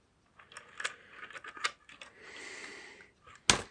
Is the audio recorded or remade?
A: recorded